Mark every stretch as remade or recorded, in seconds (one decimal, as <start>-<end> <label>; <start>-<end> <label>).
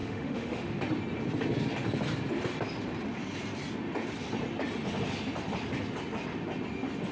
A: 0.0-0.8 remade; 0.8-7.1 recorded